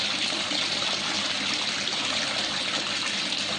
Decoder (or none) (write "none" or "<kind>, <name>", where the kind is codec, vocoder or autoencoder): none